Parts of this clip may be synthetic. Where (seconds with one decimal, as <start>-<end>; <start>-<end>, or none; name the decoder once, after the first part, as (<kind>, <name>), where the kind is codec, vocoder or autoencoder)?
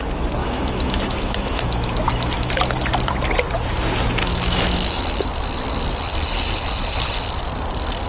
0.4-2.5 (autoencoder, DAC-VAE); 4.2-5.3